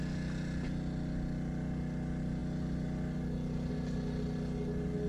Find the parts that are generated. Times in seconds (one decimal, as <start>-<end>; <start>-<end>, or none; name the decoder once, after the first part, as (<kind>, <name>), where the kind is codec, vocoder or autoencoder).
none